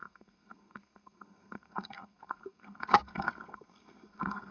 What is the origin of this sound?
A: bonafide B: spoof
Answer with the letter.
B